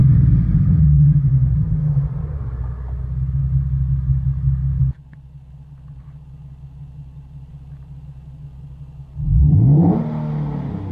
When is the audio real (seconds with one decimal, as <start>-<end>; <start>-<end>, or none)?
2.7-10.9